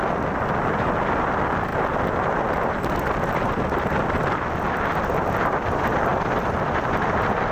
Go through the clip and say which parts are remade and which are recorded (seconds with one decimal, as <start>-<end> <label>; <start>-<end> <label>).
0.0-6.1 recorded; 6.1-7.5 remade